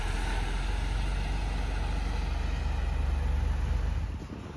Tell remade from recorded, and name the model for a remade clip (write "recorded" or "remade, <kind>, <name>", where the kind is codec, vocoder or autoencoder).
recorded